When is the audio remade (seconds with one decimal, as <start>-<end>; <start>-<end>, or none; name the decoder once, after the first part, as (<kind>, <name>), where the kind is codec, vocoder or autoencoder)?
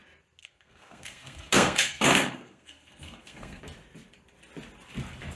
0.4-3.6 (codec, SNAC)